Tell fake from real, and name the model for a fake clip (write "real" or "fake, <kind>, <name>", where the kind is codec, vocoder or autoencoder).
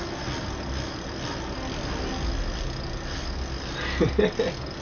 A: real